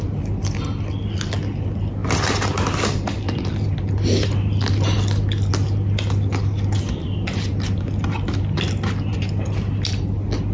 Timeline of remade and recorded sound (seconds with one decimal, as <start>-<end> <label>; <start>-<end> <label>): 0.0-10.5 recorded